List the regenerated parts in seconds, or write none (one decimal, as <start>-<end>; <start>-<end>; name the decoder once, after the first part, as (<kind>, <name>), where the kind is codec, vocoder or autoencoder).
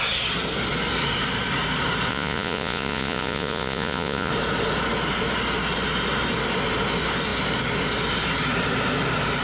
2.1-4.3 (vocoder, Vocos)